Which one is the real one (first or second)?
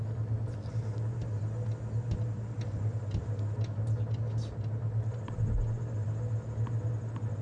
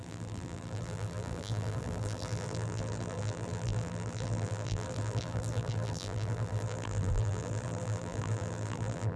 first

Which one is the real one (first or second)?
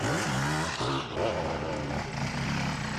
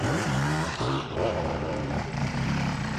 first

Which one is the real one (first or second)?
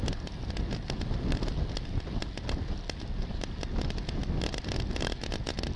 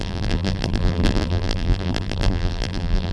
first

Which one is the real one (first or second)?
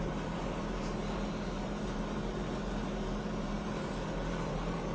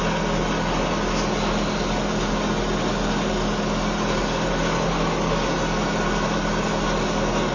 second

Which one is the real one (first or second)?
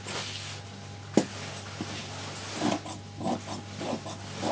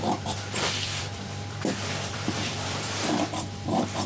first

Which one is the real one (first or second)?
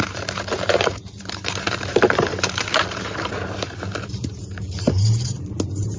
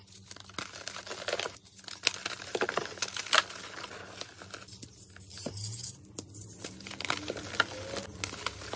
second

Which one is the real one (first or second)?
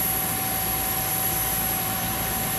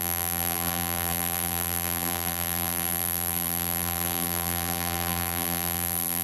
first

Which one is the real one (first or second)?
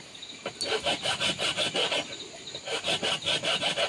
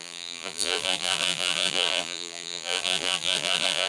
first